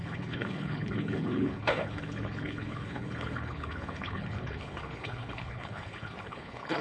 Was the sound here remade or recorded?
remade